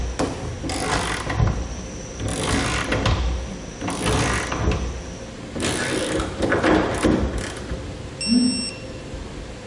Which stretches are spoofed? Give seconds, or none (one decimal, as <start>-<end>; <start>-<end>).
none